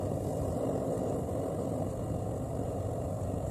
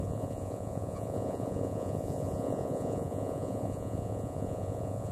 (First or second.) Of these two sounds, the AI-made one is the second